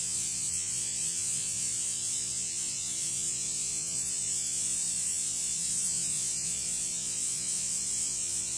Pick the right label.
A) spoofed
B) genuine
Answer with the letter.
A